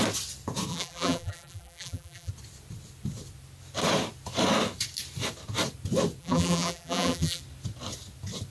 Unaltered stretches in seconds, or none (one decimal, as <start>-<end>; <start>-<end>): 0.0-0.7; 2.3-6.2; 7.4-8.5